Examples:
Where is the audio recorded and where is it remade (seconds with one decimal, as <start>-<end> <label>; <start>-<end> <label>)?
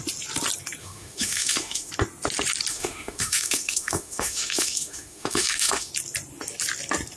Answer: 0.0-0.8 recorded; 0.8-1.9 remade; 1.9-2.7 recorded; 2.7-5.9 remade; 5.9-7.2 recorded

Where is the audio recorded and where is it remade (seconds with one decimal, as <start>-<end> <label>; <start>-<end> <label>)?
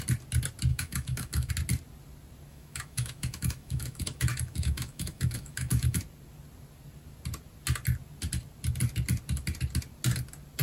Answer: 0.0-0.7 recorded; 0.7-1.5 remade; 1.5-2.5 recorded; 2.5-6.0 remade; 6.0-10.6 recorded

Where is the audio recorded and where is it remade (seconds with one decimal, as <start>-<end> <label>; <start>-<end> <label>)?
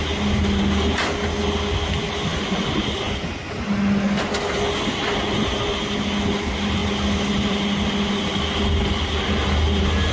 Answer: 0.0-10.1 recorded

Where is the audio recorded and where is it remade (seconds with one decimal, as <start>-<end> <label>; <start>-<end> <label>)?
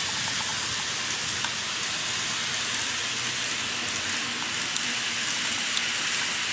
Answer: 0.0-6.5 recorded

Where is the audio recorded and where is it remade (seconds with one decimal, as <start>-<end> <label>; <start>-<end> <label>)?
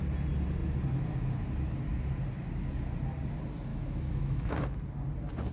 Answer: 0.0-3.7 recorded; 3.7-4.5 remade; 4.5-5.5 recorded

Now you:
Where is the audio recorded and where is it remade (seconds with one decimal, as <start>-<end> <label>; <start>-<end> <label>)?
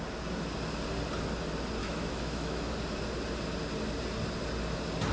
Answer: 0.0-1.8 recorded; 1.8-2.7 remade; 2.7-5.1 recorded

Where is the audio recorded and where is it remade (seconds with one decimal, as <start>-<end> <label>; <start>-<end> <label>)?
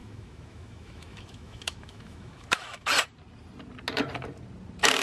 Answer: 0.0-2.9 remade; 2.9-5.0 recorded